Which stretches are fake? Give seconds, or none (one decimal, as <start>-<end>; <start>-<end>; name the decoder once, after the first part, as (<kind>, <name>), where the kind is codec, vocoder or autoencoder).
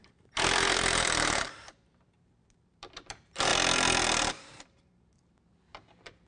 0.0-3.5 (vocoder, BigVGAN v2); 4.3-6.3